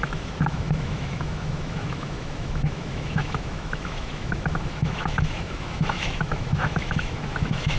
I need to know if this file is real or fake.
fake